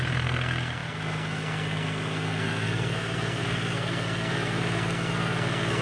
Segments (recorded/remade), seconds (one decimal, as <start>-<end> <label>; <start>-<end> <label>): 0.0-5.8 remade